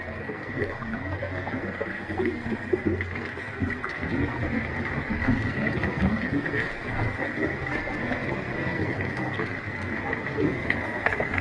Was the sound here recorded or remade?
remade